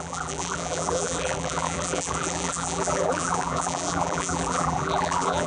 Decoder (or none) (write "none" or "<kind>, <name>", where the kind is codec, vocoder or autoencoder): vocoder, BigVGAN v2